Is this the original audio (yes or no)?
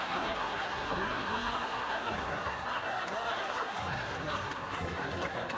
no